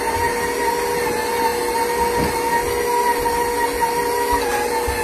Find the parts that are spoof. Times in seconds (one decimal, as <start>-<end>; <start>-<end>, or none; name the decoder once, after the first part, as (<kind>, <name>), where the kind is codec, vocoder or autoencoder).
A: none